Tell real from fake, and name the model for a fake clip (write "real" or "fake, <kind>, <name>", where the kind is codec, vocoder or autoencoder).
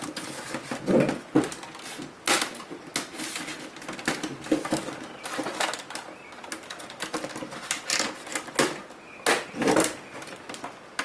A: real